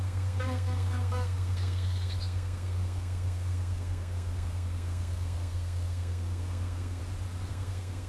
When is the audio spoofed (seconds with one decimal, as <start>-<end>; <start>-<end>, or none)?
0.0-7.0; 7.5-8.1